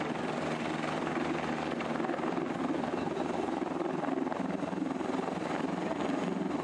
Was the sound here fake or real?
real